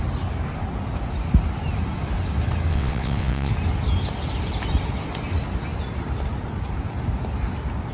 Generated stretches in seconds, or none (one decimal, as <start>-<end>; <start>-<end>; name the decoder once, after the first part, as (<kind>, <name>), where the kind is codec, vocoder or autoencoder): 2.7-3.5 (vocoder, WaveNeXt)